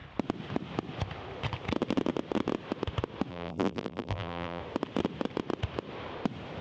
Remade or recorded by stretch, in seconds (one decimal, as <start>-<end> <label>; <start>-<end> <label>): 0.0-3.3 recorded; 3.3-4.6 remade; 4.6-6.6 recorded